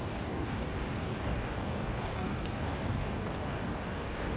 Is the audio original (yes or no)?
no